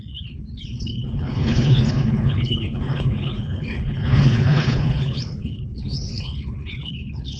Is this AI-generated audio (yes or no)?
yes